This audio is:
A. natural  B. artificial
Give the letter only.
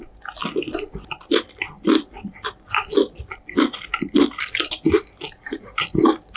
A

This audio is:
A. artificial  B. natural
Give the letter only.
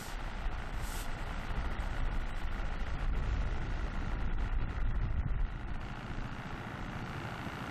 B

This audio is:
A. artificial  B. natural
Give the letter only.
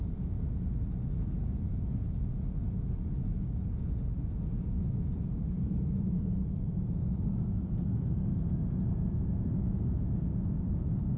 A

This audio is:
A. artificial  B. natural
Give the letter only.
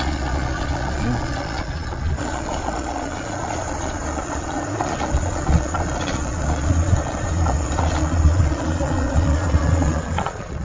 A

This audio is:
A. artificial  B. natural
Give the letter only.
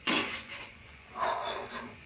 A